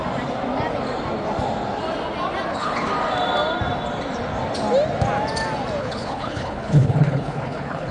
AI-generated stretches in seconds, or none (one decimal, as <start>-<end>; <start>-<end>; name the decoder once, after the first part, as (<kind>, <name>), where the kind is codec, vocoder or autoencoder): 2.5-2.9 (codec, HILCodec); 5.8-7.9